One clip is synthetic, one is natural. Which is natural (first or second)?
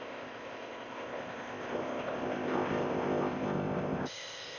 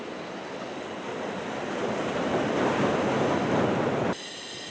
second